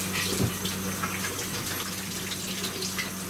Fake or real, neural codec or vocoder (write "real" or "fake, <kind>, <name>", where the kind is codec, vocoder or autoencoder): real